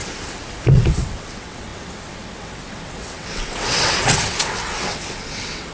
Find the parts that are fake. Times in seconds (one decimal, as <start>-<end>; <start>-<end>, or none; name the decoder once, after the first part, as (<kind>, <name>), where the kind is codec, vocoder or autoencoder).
0.7-5.7 (vocoder, WaveNeXt)